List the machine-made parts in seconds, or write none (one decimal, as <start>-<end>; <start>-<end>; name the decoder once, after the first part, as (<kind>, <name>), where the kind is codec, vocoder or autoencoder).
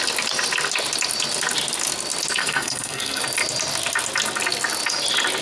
2.4-3.2 (codec, SNAC)